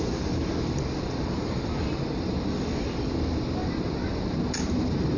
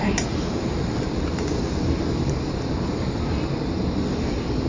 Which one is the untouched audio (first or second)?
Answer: second